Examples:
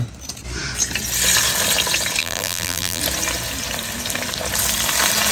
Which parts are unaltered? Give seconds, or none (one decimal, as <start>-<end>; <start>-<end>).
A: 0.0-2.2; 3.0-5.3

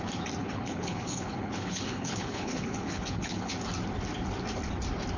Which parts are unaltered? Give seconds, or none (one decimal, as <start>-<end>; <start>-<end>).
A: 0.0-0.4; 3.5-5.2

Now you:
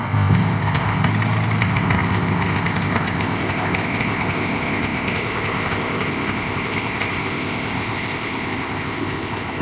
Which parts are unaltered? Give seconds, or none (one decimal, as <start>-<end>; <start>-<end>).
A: 1.1-1.6